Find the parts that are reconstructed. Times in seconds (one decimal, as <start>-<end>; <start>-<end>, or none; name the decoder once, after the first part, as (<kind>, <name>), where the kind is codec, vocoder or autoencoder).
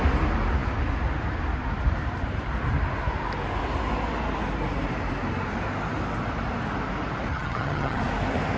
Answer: 7.3-8.0 (vocoder, HiFi-GAN)